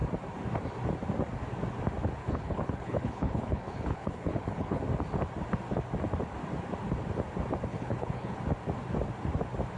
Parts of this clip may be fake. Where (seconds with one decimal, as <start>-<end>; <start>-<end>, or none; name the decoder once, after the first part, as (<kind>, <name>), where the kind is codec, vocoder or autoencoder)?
2.2-4.8 (codec, HILCodec); 7.7-8.4